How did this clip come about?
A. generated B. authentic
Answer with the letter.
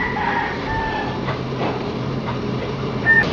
A